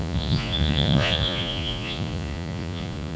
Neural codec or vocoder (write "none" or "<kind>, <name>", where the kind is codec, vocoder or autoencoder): vocoder, Vocos